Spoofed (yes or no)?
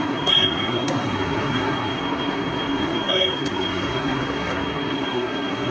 yes